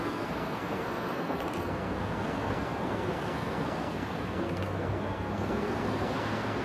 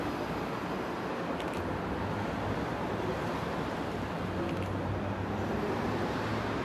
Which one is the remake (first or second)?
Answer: first